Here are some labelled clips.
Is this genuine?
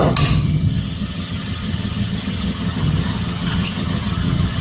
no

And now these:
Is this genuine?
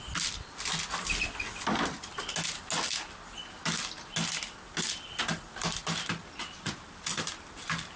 yes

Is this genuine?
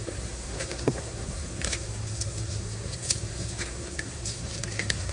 no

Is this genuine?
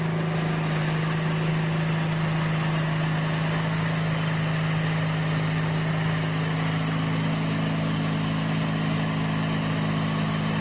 yes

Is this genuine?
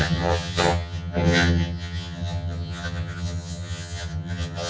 no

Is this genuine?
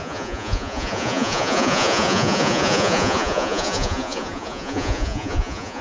no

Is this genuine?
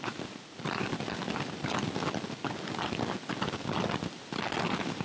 yes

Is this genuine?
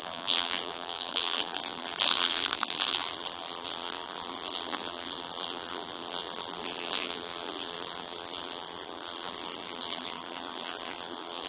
no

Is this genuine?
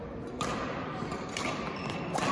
yes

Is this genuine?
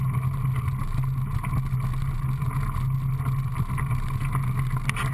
yes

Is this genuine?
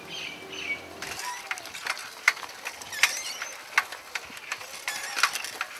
yes